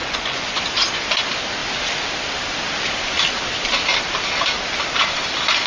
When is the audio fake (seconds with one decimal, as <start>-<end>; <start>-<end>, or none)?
0.0-0.6